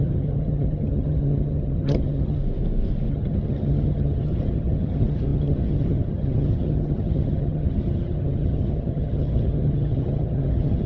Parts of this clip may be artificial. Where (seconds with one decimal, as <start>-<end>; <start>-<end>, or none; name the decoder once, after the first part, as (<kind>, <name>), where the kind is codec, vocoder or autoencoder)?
0.0-2.4 (vocoder, HiFi-GAN); 3.1-10.9